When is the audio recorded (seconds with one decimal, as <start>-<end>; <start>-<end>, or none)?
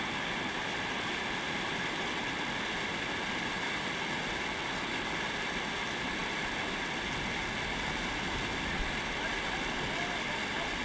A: 0.0-10.8